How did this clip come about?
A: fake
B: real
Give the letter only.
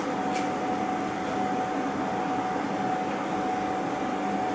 B